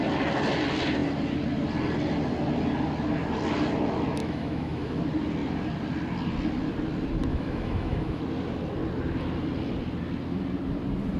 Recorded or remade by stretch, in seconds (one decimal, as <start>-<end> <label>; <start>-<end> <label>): 0.0-4.2 recorded; 4.2-5.0 remade; 5.0-7.3 recorded; 7.3-8.2 remade; 8.2-11.2 recorded